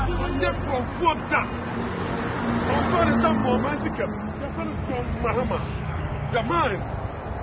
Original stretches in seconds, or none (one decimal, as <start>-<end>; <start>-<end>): 0.0-5.6; 6.5-7.4